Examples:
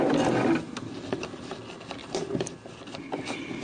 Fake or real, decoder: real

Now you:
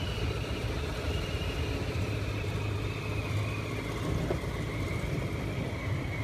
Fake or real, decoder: real